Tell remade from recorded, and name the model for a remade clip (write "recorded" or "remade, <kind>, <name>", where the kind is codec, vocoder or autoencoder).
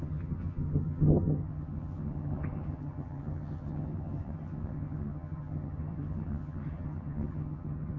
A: remade, vocoder, HiFi-GAN